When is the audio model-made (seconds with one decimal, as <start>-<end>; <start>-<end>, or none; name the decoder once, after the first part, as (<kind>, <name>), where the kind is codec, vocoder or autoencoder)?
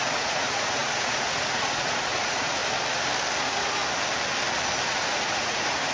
0.0-2.6 (vocoder, Vocos); 3.4-3.8; 4.8-5.9